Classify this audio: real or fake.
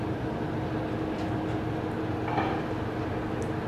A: real